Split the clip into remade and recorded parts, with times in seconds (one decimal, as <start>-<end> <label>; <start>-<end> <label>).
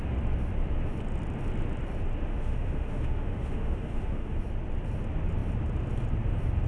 0.0-2.3 recorded; 2.3-4.4 remade; 4.4-6.7 recorded